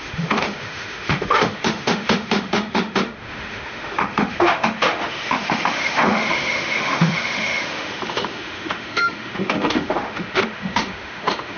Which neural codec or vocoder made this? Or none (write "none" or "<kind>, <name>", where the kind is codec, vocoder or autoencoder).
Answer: autoencoder, DAC-VAE